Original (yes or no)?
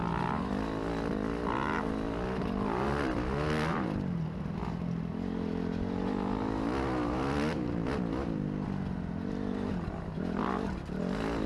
yes